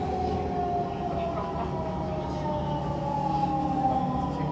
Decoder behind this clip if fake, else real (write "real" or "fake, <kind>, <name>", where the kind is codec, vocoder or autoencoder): real